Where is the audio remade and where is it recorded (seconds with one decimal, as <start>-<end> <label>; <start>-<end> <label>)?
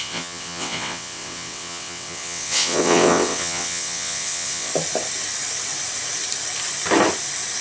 0.0-4.7 remade; 4.7-7.6 recorded